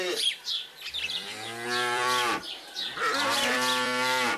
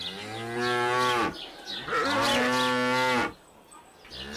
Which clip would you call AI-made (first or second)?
first